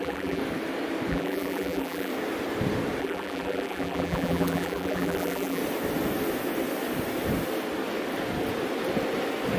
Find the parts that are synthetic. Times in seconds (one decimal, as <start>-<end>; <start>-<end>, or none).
0.0-0.4; 1.1-2.1; 3.0-5.6